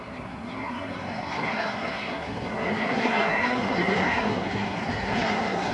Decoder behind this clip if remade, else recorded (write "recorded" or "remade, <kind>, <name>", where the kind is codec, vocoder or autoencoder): remade, codec, SNAC